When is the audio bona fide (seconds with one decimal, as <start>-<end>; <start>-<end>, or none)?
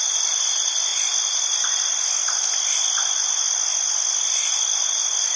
0.0-5.4